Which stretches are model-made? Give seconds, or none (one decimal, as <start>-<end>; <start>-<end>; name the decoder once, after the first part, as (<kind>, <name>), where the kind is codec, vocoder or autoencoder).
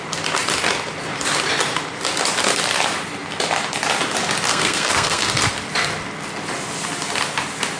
4.5-5.2 (codec, SNAC)